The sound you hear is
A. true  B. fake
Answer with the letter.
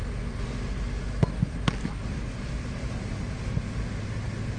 A